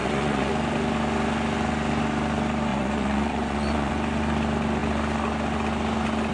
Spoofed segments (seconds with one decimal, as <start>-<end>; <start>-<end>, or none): 0.0-0.5; 2.7-3.9